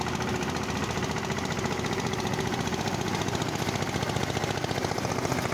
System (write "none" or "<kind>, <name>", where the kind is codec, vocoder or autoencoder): vocoder, BigVGAN v2